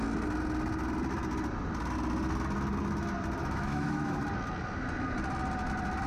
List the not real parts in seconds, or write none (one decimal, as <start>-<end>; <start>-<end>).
3.4-4.2